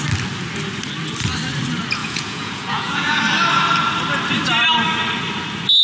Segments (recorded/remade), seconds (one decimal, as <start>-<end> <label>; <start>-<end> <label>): 0.0-2.0 recorded; 2.0-3.2 remade; 3.2-5.8 recorded